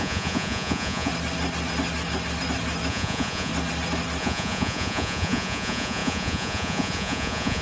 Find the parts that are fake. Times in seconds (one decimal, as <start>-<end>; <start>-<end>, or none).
0.0-1.1; 2.9-3.5; 4.2-7.6